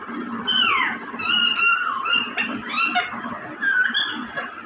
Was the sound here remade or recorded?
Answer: remade